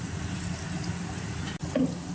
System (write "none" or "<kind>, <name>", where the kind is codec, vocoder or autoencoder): none